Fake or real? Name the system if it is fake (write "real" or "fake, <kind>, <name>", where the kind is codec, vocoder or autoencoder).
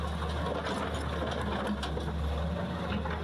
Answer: real